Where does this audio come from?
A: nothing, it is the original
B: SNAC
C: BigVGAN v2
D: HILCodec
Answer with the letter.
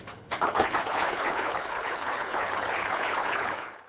D